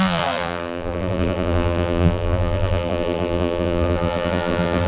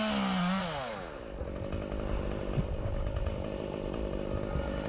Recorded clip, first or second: second